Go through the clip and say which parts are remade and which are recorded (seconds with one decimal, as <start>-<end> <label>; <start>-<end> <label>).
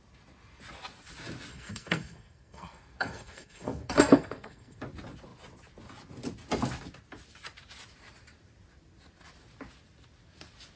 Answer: 0.0-1.5 recorded; 1.5-4.8 remade; 4.8-10.8 recorded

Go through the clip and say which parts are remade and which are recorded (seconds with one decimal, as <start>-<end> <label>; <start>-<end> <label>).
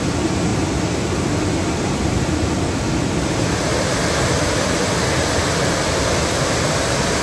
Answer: 0.0-7.2 recorded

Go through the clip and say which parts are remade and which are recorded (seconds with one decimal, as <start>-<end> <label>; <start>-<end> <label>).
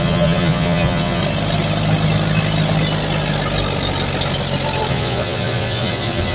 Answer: 0.0-1.2 remade; 1.2-4.9 recorded; 4.9-6.3 remade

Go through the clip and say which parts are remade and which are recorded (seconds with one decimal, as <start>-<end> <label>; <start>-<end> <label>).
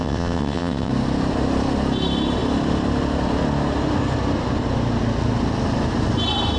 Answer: 0.0-0.9 remade; 0.9-6.6 recorded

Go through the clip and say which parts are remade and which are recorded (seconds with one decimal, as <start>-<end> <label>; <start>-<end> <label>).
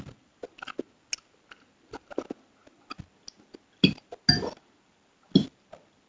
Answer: 0.0-6.1 recorded